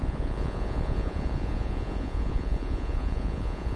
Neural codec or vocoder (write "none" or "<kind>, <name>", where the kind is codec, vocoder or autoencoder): vocoder, Vocos